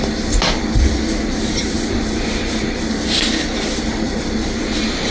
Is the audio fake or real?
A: real